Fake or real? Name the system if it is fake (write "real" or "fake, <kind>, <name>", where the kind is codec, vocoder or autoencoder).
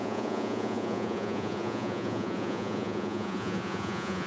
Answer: fake, vocoder, Vocos